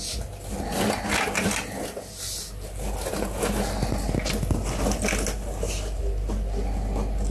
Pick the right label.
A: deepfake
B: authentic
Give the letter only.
B